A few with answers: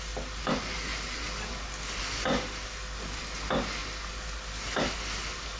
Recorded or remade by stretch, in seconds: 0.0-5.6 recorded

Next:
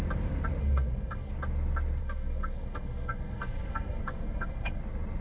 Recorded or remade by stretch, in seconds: 0.0-0.6 recorded; 0.6-1.3 remade; 1.3-2.0 recorded; 2.0-4.8 remade; 4.8-5.2 recorded